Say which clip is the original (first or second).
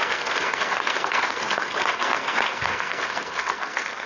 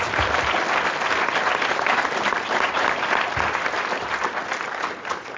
second